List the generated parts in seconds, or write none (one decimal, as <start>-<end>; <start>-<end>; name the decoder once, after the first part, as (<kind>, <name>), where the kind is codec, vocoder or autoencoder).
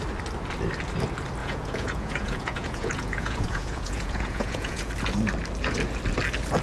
1.4-4.9 (vocoder, Vocos)